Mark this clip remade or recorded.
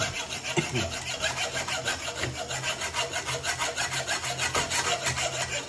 recorded